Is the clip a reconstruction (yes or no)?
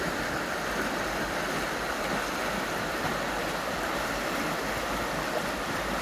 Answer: no